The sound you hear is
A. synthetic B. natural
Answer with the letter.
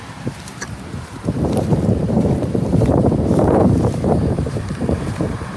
A